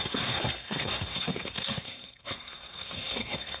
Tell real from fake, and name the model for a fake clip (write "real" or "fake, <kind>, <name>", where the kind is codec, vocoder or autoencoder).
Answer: fake, codec, SNAC